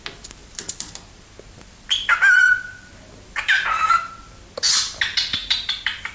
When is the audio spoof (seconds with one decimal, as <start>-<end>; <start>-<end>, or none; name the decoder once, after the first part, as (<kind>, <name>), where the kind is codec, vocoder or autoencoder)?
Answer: none